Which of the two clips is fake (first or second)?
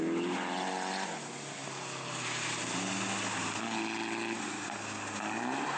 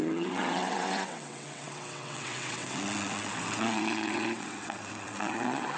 second